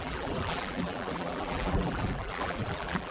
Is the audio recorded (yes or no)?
no